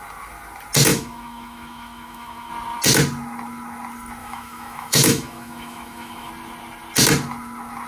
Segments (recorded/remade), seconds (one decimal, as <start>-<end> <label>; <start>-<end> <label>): 0.0-0.9 recorded; 0.9-2.5 remade; 2.5-4.2 recorded; 4.2-6.3 remade; 6.3-7.9 recorded